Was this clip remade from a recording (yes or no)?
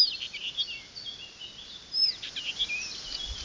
no